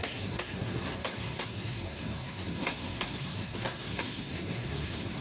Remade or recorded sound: remade